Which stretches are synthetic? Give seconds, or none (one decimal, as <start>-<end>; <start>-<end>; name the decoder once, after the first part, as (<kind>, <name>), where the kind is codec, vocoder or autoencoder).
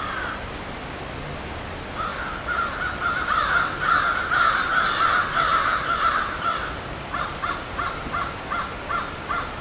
5.5-8.1 (vocoder, BigVGAN v2)